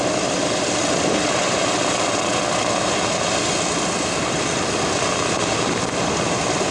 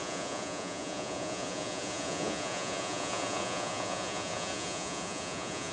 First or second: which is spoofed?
second